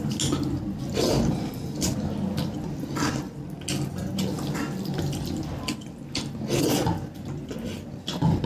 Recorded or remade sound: recorded